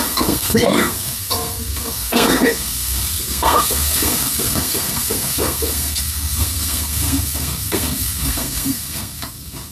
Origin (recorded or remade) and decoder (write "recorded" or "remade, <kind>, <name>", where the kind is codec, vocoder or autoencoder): remade, codec, SNAC